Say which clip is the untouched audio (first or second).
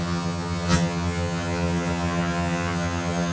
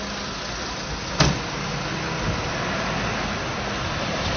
second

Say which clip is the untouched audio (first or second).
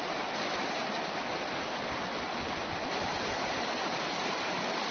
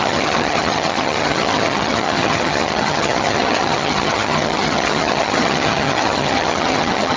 first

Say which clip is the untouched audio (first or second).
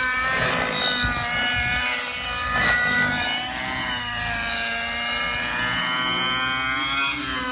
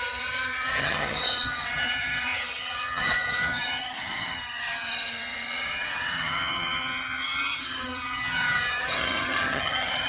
first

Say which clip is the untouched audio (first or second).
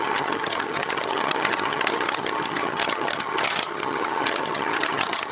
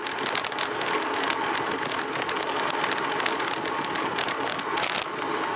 second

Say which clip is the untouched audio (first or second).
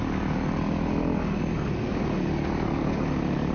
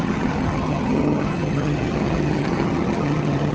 first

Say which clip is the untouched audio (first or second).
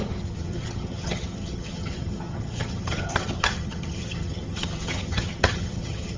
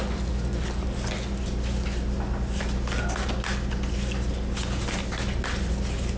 second